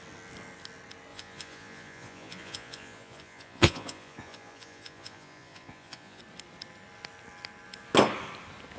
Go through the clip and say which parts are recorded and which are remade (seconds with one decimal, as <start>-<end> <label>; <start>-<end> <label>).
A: 0.0-1.1 recorded; 1.1-6.2 remade; 6.2-8.8 recorded